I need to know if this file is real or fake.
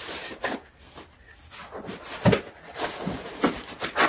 real